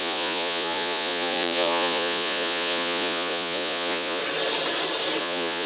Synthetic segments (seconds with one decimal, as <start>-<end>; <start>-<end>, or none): 0.0-4.2; 5.2-5.7